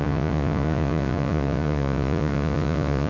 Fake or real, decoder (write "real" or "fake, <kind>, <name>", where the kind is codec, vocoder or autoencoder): fake, vocoder, Vocos